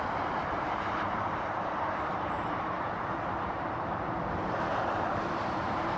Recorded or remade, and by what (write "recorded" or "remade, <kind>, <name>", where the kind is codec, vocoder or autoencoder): remade, vocoder, BigVGAN v2